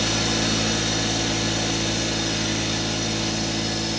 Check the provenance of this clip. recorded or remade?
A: recorded